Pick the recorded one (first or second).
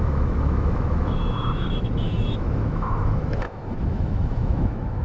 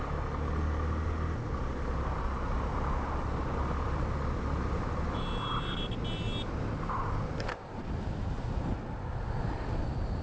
second